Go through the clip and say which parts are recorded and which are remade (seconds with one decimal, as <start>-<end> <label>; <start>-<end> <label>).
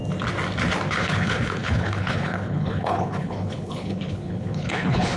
0.0-0.9 recorded; 0.9-5.2 remade